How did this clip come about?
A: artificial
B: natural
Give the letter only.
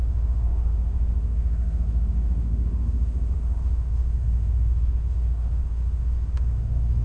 A